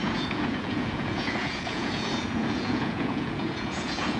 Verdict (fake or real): fake